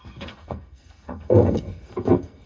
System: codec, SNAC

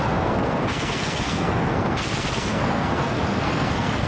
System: codec, SNAC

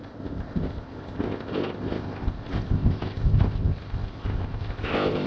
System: codec, ZipCodec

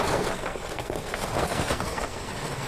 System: codec, SNAC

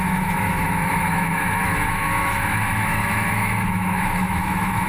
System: autoencoder, DAC-VAE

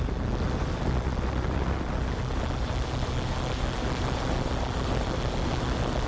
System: none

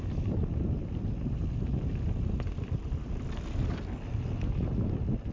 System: none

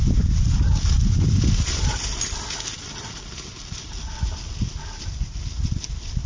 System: none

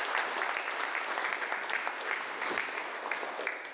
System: none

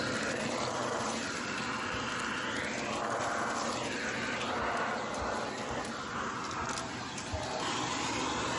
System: none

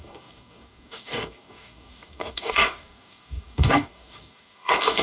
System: codec, DAC